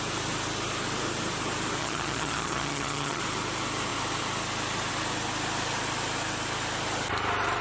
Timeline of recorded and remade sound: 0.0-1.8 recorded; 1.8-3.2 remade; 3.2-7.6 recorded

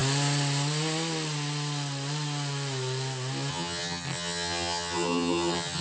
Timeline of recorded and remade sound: 0.0-3.5 recorded; 3.5-5.8 remade

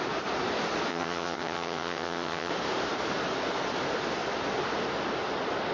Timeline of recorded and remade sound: 0.0-0.9 recorded; 0.9-2.5 remade; 2.5-5.7 recorded

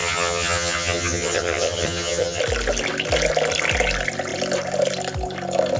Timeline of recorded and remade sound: 0.0-2.4 remade; 2.4-5.8 recorded

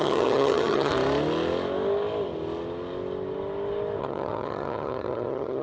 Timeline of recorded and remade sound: 0.0-0.9 remade; 0.9-4.0 recorded; 4.0-5.6 remade